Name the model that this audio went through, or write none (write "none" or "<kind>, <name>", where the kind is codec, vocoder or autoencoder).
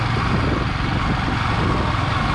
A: none